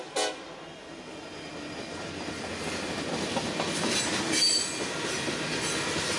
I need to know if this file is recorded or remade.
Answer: recorded